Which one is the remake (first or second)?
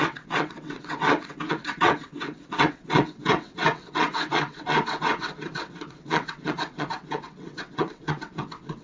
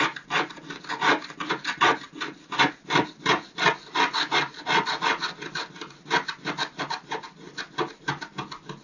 first